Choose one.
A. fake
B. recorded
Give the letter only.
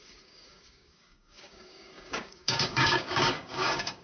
A